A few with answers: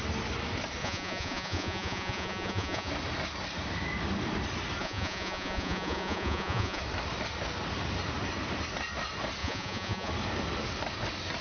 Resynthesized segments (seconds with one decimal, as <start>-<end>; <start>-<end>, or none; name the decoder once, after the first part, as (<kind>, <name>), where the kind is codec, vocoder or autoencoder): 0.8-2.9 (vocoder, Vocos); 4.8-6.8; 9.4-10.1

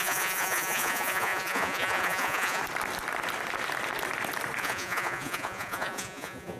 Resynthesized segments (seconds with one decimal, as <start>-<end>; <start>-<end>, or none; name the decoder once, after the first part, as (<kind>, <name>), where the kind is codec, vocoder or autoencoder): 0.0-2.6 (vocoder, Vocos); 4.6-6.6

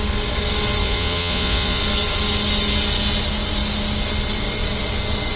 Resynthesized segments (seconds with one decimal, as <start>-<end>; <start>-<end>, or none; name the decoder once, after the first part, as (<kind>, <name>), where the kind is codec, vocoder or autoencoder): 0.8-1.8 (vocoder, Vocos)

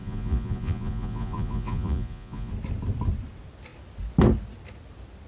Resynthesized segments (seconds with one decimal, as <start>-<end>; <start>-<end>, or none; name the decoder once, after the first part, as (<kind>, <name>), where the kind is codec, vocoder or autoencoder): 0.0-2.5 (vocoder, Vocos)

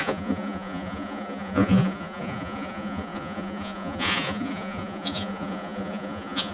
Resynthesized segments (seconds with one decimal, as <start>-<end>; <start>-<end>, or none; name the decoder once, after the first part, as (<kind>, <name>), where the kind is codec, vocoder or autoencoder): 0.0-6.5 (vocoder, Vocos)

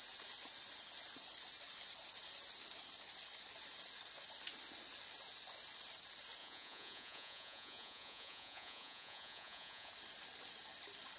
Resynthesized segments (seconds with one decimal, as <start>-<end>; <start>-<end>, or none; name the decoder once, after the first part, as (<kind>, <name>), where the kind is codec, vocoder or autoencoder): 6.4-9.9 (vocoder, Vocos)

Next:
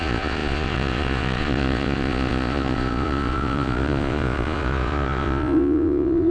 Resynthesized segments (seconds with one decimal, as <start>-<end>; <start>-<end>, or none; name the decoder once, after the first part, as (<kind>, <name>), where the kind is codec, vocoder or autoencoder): 0.0-6.3 (vocoder, Vocos)

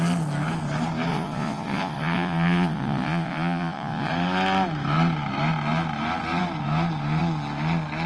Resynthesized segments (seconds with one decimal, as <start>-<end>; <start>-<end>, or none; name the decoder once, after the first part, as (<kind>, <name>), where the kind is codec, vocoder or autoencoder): 1.1-4.1 (vocoder, Vocos)